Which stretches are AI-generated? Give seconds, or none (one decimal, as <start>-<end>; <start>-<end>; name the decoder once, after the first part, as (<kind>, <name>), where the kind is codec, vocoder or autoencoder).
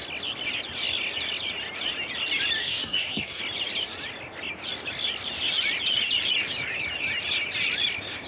2.6-3.4 (codec, SNAC)